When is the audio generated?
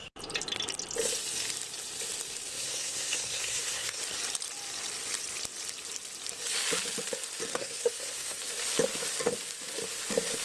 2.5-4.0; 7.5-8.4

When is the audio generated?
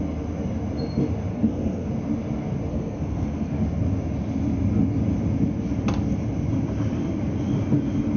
1.3-1.9; 2.7-3.5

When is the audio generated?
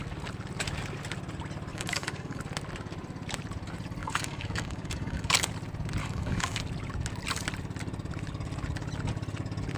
1.7-2.4; 4.0-5.5; 6.0-6.6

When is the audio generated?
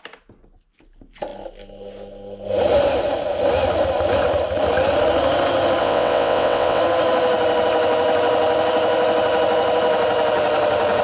5.8-6.8